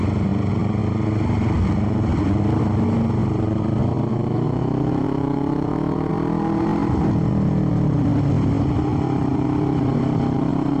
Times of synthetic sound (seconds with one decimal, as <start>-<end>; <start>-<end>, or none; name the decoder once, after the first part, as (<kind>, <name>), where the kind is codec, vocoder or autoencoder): 4.1-6.1 (autoencoder, DAC-VAE)